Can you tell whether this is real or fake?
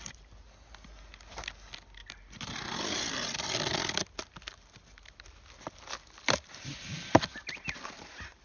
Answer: real